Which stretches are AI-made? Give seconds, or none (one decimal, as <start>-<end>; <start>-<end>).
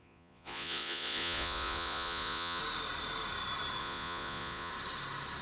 0.0-2.6; 3.8-4.7